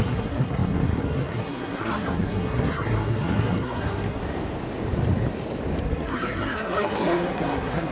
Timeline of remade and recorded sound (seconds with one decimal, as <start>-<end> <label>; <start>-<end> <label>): 0.0-4.2 remade; 4.2-5.8 recorded; 5.8-7.9 remade